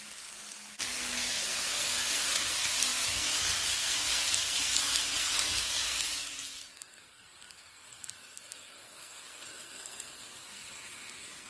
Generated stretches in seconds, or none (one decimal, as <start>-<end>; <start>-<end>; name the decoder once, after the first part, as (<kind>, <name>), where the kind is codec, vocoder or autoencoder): 0.0-11.5 (codec, SNAC)

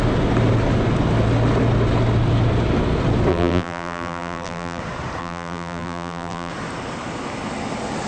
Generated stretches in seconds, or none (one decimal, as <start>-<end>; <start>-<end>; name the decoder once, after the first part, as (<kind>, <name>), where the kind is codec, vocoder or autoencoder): 3.3-4.8 (vocoder, BigVGAN v2); 5.2-6.5

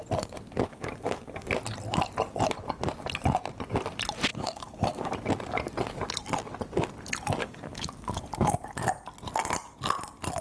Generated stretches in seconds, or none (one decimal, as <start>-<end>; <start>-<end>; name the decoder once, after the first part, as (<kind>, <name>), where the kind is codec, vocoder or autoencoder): 0.7-1.5 (codec, DAC); 4.3-5.1; 7.4-8.2

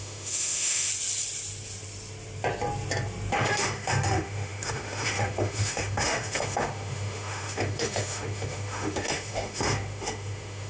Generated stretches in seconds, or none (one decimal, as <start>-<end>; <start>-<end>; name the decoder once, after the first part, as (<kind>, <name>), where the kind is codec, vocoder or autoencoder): 0.0-0.9 (autoencoder, DAC-VAE); 3.3-10.7

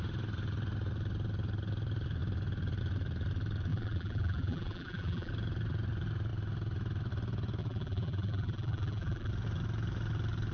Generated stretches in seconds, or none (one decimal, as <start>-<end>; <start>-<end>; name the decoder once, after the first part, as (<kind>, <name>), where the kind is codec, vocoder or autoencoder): 3.7-5.3 (vocoder, BigVGAN v2); 7.6-9.3